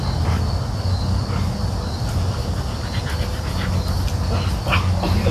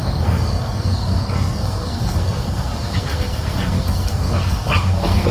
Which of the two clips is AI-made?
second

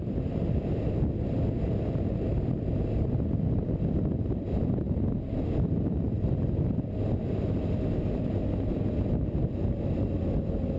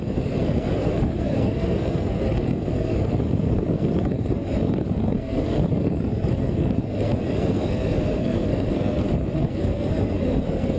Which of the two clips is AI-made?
second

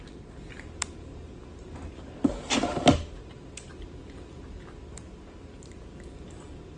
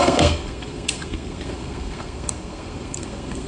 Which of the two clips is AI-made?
second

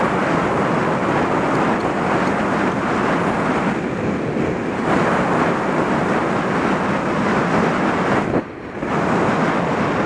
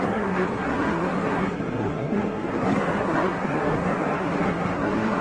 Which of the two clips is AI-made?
second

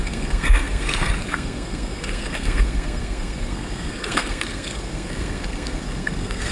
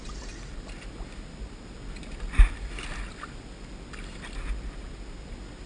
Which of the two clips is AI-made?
first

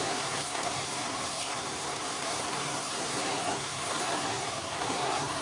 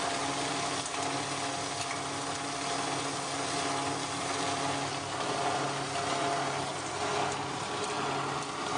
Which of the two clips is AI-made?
first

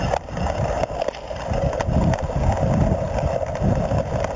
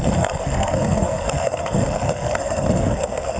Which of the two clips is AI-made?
second